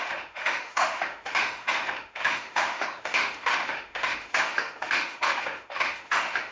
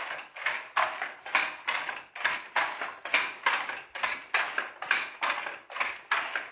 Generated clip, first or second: first